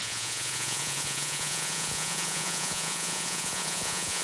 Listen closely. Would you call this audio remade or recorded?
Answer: remade